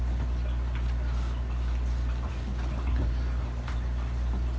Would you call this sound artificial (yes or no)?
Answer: no